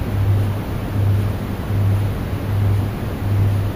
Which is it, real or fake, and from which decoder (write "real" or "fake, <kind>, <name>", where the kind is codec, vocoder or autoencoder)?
real